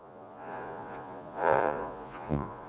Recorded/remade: remade